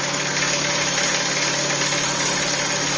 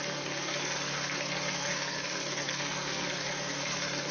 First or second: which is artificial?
second